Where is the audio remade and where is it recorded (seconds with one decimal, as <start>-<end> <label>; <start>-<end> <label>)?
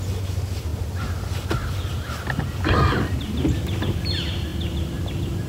0.0-5.5 recorded